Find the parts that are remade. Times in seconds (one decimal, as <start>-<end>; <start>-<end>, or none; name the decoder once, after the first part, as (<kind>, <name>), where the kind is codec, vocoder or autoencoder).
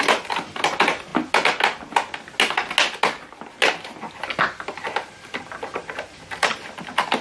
0.0-1.1 (vocoder, BigVGAN v2); 5.4-7.2